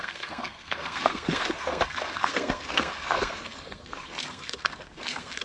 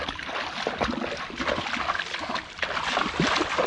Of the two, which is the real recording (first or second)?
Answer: second